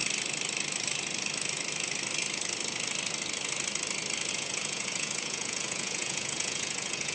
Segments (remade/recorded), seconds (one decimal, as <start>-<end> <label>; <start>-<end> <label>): 0.0-4.3 recorded; 4.3-7.1 remade